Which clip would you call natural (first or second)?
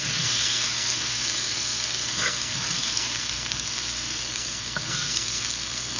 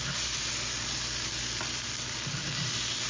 second